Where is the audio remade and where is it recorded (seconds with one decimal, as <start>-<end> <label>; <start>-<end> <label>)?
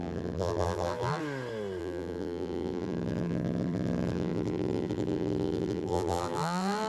0.0-1.2 remade; 1.2-1.8 recorded; 1.8-6.9 remade